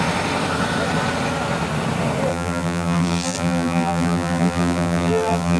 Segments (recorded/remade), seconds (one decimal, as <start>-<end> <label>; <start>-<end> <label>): 0.0-2.3 recorded; 2.3-5.6 remade